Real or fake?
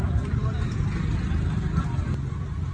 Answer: real